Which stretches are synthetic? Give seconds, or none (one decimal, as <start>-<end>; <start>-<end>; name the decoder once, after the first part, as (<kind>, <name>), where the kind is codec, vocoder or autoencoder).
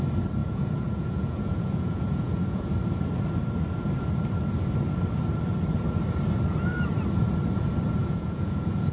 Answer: 0.4-2.7 (vocoder, Vocos); 8.0-8.9